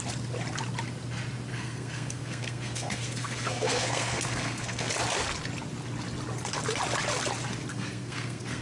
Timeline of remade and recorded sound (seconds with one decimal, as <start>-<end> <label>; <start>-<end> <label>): 0.0-1.5 recorded; 1.5-4.9 remade; 4.9-7.7 recorded; 7.7-8.6 remade